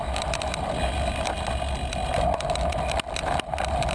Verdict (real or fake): real